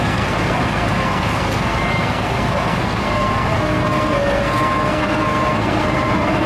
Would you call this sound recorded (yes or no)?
no